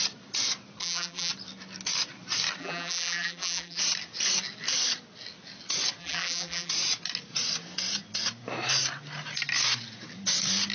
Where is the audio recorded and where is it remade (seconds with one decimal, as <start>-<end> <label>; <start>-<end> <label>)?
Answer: 0.0-0.8 recorded; 0.8-1.3 remade; 1.3-2.6 recorded; 2.6-3.8 remade; 3.8-6.0 recorded; 6.0-6.7 remade; 6.7-10.7 recorded